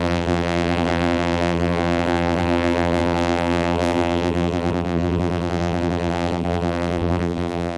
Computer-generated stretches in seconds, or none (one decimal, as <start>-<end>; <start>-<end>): 0.0-7.8